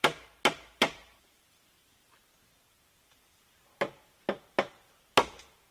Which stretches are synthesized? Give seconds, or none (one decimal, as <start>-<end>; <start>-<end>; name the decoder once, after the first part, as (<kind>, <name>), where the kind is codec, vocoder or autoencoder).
0.0-2.2 (vocoder, BigVGAN v2)